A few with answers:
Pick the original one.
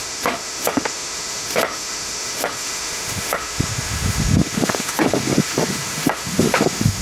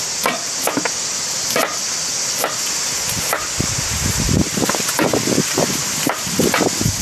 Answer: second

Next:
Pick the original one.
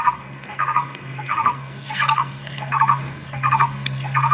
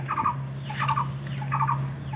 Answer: second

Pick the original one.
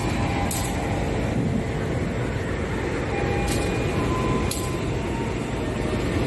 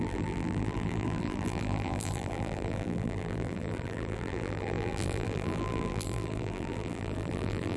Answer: first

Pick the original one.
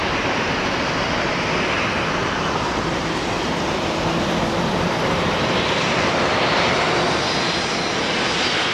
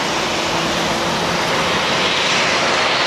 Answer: second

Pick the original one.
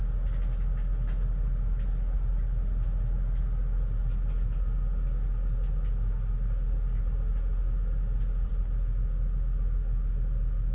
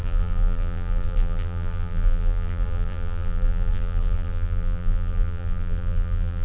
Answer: first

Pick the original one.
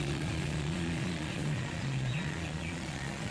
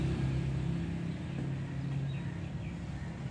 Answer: second